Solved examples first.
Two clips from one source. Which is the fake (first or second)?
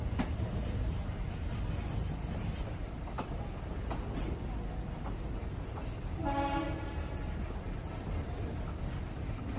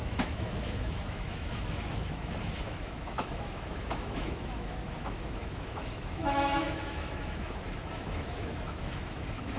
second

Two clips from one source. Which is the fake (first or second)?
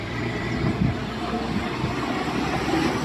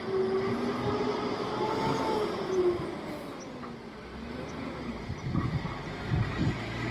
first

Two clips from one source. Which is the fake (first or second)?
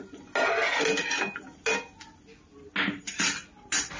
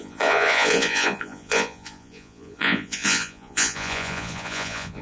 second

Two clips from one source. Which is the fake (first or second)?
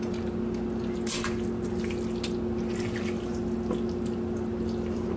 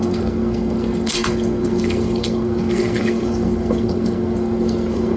second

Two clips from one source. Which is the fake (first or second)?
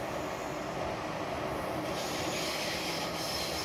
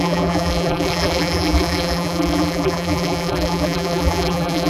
second